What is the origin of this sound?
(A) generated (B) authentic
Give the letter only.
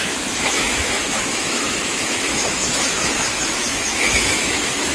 A